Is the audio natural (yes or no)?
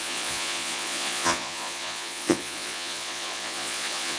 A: no